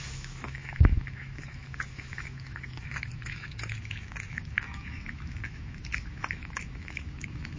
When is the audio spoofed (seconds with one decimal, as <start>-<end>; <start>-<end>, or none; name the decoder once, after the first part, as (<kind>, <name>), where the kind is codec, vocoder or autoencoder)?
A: 0.0-7.6 (autoencoder, DAC-VAE)